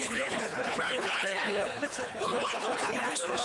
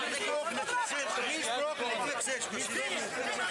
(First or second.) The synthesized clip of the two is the first